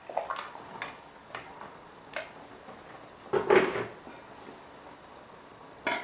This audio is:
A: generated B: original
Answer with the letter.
B